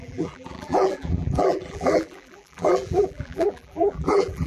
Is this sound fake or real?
fake